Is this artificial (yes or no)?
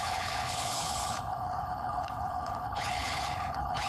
yes